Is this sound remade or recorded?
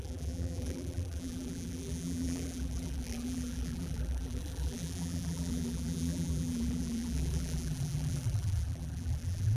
remade